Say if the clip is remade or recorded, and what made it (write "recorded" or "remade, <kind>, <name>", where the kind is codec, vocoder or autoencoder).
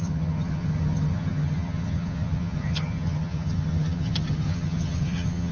remade, vocoder, HiFi-GAN